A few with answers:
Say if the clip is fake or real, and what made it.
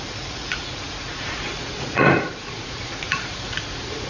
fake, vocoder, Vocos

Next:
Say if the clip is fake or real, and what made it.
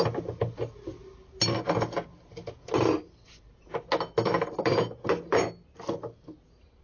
real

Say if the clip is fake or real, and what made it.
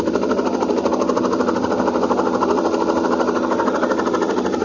real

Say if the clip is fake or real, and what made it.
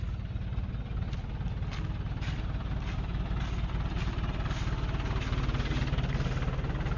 real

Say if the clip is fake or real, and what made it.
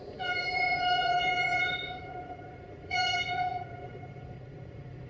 fake, vocoder, Vocos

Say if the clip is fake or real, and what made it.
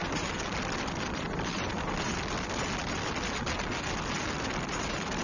real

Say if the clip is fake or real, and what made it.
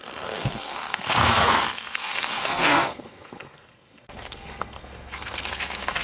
fake, codec, SNAC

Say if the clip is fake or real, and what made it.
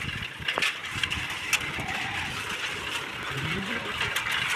real